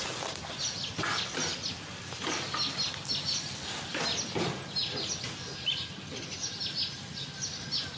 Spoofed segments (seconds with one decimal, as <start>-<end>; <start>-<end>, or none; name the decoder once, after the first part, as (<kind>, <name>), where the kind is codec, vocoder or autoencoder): none